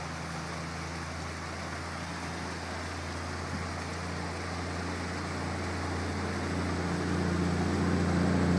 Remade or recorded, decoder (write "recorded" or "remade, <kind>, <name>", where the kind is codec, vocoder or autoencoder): recorded